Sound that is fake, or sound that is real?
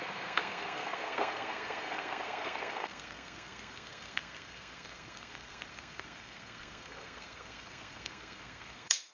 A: fake